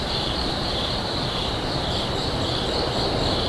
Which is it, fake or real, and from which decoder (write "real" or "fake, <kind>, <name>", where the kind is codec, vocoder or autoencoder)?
fake, vocoder, BigVGAN v2